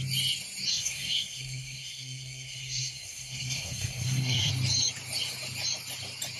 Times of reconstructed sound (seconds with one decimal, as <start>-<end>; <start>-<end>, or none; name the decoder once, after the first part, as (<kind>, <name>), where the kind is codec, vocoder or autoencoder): 0.7-4.5 (codec, SNAC)